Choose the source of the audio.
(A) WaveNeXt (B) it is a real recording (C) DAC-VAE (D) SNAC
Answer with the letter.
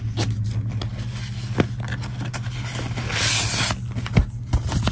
B